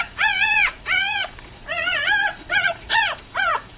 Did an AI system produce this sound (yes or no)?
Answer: yes